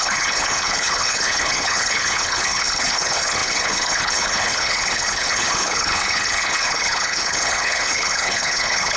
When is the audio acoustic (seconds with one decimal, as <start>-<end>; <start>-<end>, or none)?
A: none